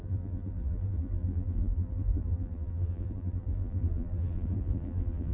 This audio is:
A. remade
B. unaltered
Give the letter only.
A